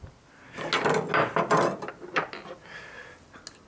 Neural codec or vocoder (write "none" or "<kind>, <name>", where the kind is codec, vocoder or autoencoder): none